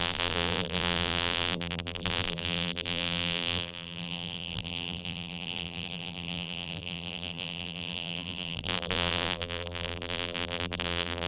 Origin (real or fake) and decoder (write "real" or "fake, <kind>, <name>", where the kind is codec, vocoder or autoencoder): fake, vocoder, BigVGAN v2